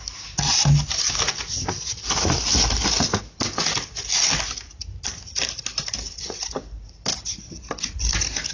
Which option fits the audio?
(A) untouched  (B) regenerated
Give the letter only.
A